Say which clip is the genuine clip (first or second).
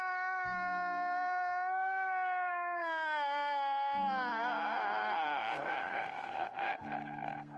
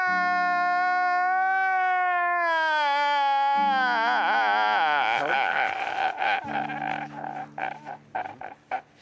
second